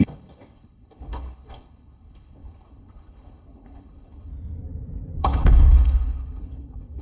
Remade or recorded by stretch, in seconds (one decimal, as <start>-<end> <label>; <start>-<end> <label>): 0.0-4.3 remade; 4.3-5.2 recorded; 5.2-7.0 remade